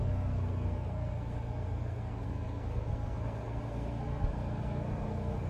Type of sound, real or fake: fake